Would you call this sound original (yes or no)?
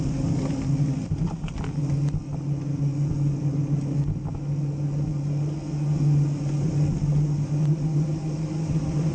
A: yes